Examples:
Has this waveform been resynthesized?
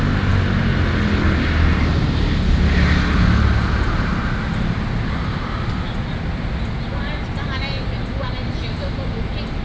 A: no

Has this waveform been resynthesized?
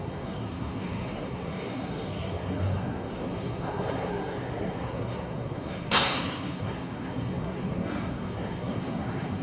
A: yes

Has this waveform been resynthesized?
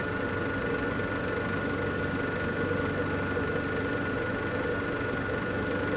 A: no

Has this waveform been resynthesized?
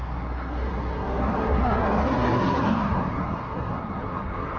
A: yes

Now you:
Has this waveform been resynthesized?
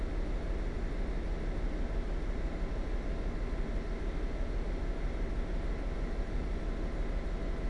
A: no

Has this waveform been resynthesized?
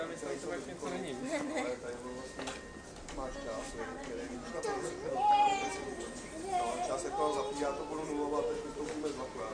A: no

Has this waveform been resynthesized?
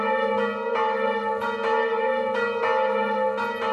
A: no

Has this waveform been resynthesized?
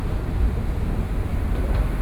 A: no